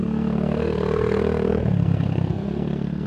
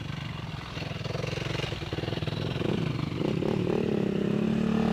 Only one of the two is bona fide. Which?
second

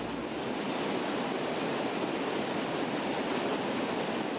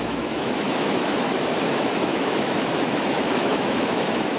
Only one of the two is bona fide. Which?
first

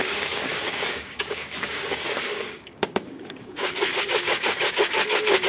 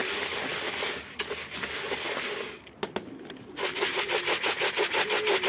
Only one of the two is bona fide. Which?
second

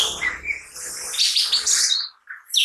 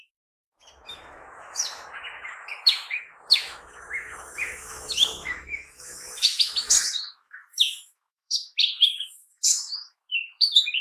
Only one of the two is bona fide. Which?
first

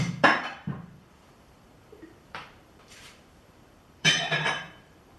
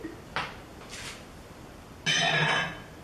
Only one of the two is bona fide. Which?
second